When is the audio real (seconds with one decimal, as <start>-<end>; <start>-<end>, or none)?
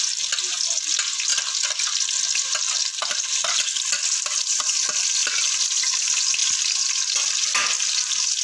0.0-8.4